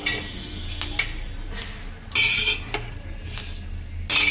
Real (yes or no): yes